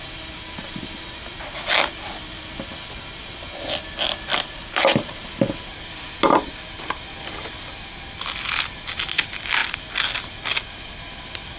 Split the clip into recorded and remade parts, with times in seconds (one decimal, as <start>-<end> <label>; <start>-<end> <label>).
0.0-11.6 recorded